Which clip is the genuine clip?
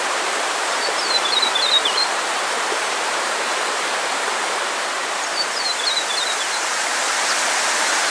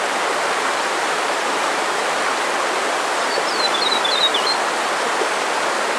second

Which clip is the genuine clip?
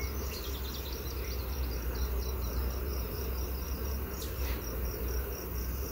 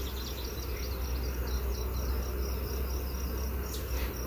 second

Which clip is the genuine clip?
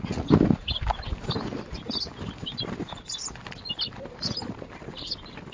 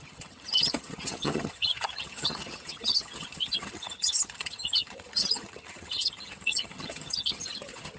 first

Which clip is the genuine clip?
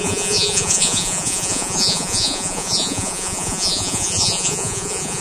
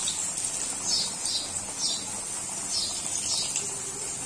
second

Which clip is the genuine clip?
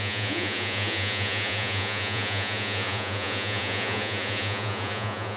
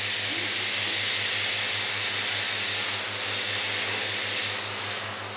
second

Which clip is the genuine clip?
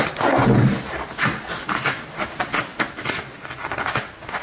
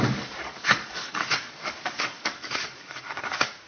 first